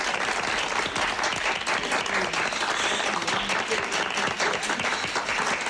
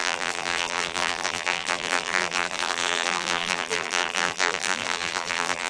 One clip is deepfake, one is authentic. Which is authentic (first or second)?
first